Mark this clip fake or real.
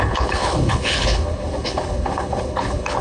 fake